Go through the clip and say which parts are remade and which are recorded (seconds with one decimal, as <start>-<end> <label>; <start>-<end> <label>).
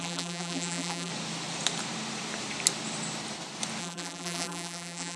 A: 0.0-1.1 remade; 1.1-3.8 recorded; 3.8-5.2 remade